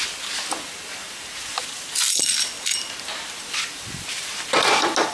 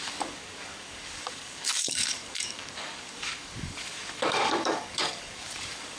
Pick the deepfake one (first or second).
second